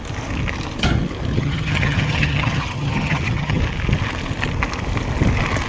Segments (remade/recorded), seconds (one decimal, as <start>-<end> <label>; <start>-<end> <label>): 0.0-1.3 recorded; 1.3-3.6 remade; 3.6-5.7 recorded